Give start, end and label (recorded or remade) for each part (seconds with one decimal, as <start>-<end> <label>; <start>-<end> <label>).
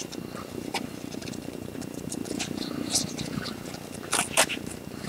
0.0-0.7 recorded; 0.7-2.2 remade; 2.2-4.4 recorded; 4.4-5.1 remade